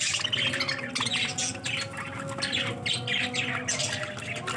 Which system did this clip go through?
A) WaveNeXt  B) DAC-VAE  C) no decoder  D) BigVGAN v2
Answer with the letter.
C